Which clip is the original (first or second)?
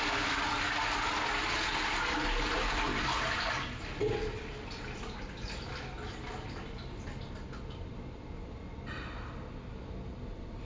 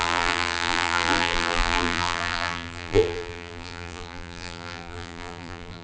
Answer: first